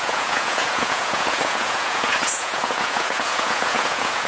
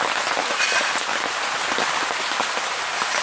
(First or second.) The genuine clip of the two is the second